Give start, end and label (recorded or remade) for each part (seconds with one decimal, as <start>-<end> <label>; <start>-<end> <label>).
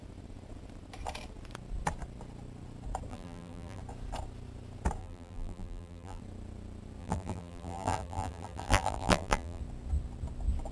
0.0-3.1 recorded; 3.1-3.8 remade; 3.8-5.0 recorded; 5.0-6.2 remade; 6.2-7.0 recorded; 7.0-9.6 remade; 9.6-10.7 recorded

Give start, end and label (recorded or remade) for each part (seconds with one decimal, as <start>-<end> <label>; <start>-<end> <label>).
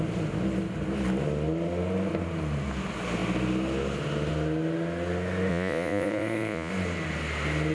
0.0-5.5 recorded; 5.5-6.7 remade; 6.7-7.7 recorded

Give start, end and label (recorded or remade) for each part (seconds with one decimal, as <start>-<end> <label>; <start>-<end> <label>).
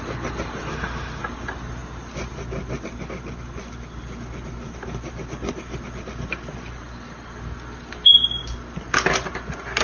0.0-0.7 recorded; 0.7-1.2 remade; 1.2-9.8 recorded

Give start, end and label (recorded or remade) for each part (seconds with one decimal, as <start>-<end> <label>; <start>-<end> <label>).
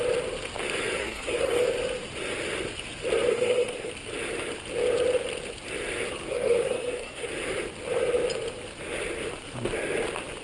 0.0-1.0 recorded; 1.0-1.6 remade; 1.6-3.3 recorded; 3.3-3.9 remade; 3.9-6.3 recorded; 6.3-7.3 remade; 7.3-10.4 recorded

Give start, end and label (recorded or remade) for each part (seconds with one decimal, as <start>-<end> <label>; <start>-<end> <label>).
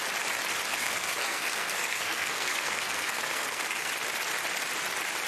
0.0-0.7 recorded; 0.7-3.9 remade; 3.9-5.3 recorded